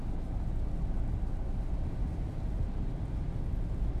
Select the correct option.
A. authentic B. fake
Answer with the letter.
A